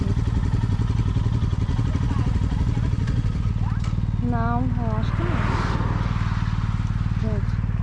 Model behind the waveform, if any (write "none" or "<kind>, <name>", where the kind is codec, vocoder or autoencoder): none